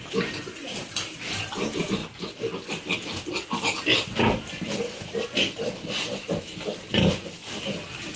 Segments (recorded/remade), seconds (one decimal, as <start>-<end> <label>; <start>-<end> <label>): 0.0-8.2 recorded